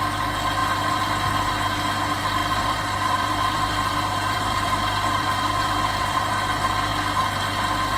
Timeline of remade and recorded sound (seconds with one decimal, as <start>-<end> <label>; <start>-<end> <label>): 0.0-2.4 recorded; 2.4-6.3 remade; 6.3-8.0 recorded